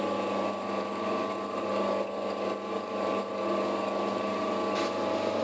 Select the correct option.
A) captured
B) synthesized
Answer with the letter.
A